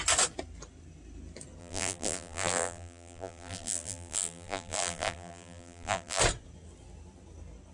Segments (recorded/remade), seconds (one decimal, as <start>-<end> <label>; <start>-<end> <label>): 0.0-1.6 recorded; 1.6-6.2 remade; 6.2-7.7 recorded